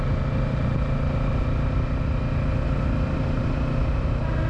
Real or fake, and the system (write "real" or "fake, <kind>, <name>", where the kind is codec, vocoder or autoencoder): real